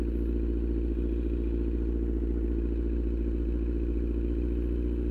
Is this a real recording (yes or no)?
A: yes